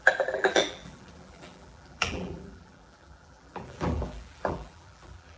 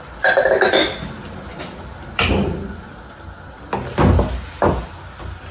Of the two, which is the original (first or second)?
second